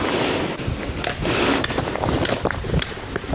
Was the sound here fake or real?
real